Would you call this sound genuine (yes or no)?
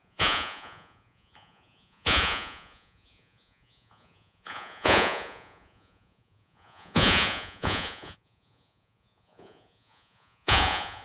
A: no